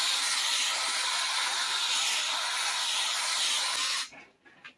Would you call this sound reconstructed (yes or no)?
no